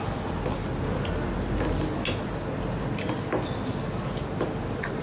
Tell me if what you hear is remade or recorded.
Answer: recorded